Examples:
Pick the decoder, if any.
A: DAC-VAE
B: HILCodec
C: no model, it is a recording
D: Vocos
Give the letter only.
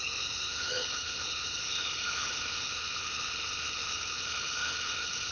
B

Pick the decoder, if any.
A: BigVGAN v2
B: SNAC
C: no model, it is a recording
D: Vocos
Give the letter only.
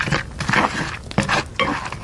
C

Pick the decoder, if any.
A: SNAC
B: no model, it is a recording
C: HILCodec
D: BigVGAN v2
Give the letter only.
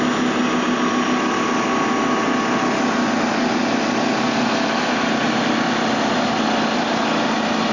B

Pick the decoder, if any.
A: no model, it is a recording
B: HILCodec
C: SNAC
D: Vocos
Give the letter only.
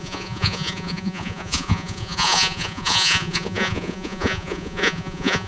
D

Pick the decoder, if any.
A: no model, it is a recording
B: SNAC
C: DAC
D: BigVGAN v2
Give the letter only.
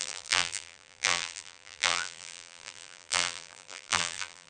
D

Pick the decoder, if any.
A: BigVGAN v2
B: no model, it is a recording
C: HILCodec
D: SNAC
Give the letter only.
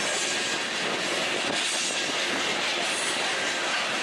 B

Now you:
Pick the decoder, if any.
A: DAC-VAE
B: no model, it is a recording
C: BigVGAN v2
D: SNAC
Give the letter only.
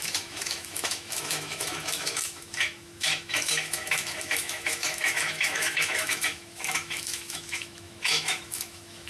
A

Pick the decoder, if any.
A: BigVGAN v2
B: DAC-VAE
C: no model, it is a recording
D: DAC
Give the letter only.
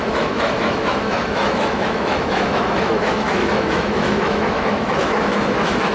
B